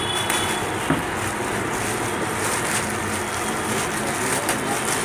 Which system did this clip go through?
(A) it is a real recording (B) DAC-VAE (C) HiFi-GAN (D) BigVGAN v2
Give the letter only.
A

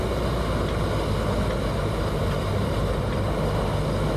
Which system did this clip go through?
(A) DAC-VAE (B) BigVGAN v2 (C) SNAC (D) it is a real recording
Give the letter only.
D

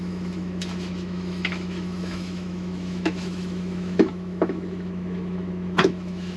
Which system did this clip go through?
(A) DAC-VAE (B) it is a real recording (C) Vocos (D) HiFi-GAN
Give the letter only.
A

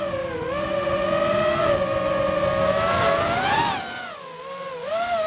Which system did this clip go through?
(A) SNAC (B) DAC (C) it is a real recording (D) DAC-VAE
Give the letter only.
C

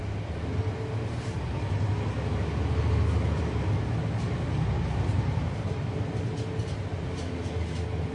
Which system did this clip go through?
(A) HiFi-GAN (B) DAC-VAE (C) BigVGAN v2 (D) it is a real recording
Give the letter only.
D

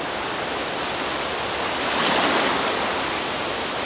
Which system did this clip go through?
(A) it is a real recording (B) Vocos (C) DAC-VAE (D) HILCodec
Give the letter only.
A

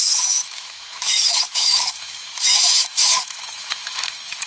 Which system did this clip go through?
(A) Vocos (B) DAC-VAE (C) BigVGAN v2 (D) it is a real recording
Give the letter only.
B